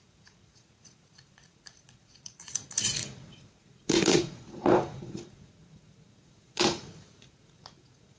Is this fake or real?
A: fake